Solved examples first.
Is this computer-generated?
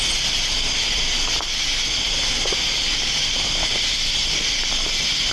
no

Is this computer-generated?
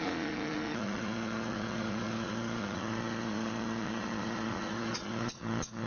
yes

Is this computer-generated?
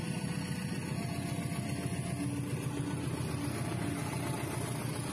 no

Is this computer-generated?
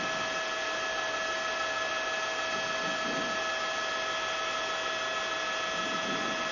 no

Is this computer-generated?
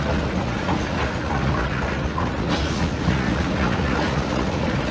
yes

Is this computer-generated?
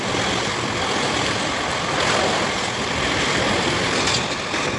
no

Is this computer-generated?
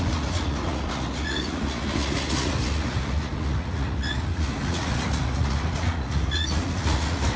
yes